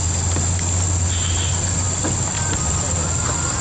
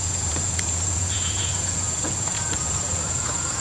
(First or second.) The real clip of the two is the first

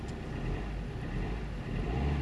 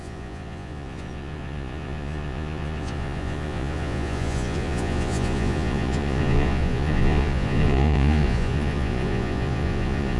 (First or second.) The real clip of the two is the first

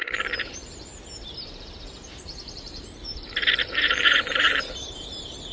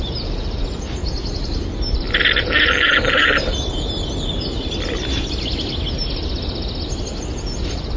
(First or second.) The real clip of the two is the second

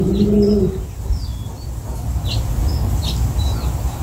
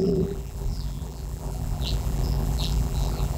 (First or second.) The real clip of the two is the first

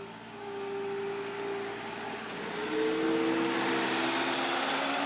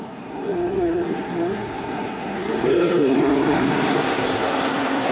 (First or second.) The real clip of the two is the first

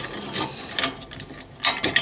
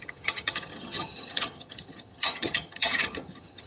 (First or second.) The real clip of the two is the first